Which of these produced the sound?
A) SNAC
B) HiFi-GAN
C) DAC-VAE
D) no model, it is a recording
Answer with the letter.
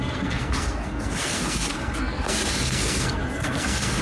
A